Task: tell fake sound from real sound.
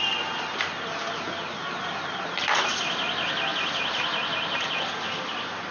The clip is real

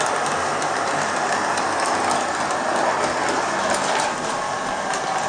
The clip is real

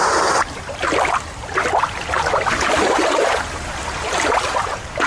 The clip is fake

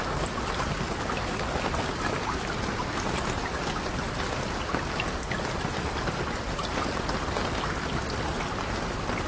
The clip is real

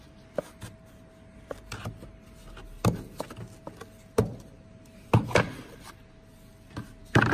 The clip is real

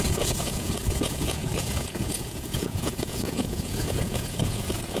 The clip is fake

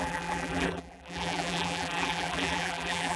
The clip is fake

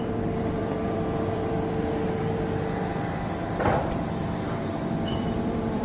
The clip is fake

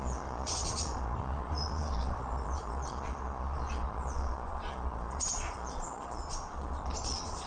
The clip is fake